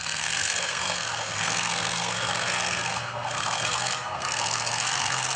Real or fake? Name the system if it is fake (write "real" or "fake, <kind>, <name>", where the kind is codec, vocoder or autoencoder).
fake, codec, SNAC